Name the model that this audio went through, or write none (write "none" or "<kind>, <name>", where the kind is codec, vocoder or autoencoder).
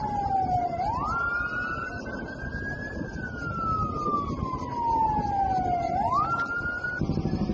none